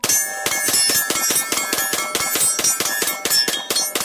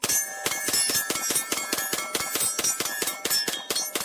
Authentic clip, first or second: first